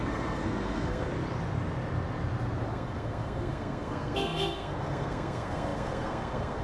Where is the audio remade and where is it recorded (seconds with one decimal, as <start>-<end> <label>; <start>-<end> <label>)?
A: 0.0-1.1 remade; 1.1-2.7 recorded; 2.7-6.6 remade